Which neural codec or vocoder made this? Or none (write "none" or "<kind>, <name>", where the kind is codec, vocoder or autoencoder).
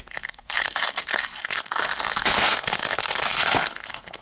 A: codec, SNAC